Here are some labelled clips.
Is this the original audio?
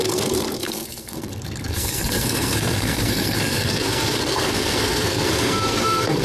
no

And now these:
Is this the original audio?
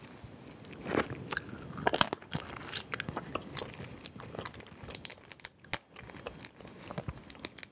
yes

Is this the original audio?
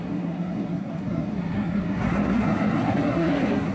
no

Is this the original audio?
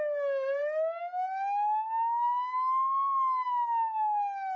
yes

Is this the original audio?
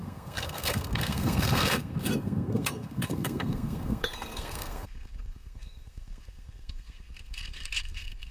no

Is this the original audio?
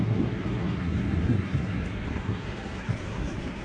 no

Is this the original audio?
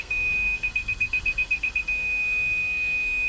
no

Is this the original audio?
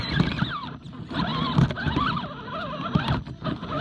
yes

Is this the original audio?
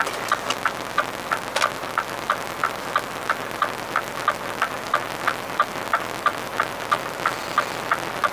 yes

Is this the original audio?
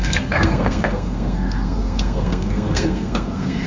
no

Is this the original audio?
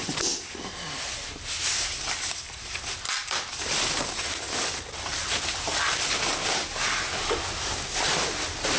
yes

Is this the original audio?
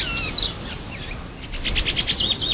yes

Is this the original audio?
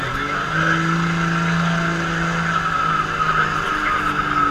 yes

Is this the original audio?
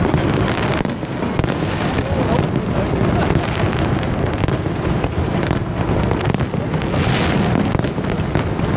yes